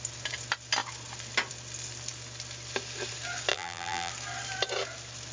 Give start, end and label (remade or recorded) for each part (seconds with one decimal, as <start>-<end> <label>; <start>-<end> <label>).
0.0-3.5 recorded; 3.5-4.1 remade; 4.1-5.3 recorded

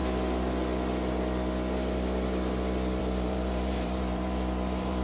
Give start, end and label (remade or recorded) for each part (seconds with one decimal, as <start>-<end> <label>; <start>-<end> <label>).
0.0-3.0 recorded; 3.0-5.0 remade

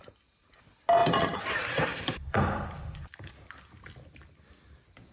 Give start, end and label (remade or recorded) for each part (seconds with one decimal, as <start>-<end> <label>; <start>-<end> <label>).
0.0-1.0 recorded; 1.0-3.3 remade; 3.3-5.1 recorded

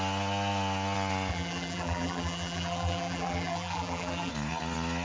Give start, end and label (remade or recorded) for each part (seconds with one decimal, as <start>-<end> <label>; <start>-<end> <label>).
0.0-1.3 recorded; 1.3-4.3 remade; 4.3-5.0 recorded

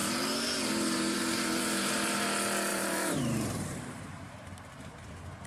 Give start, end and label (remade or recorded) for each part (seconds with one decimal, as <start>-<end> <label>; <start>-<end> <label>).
0.0-2.2 remade; 2.2-2.7 recorded; 2.7-4.3 remade; 4.3-5.5 recorded

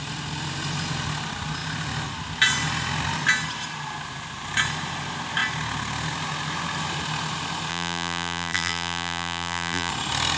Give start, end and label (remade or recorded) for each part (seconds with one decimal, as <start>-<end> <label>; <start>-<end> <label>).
0.0-7.7 recorded; 7.7-9.9 remade; 9.9-10.4 recorded

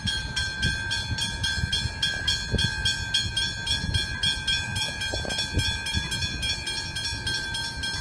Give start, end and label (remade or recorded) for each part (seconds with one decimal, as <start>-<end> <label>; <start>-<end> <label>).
0.0-8.0 recorded

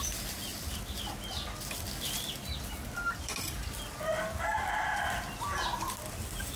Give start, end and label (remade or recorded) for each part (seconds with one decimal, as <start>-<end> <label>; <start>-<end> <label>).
0.0-6.6 remade